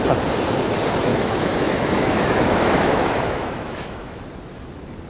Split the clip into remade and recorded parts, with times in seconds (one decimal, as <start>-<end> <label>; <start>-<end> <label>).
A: 0.0-1.1 recorded; 1.1-4.2 remade; 4.2-5.1 recorded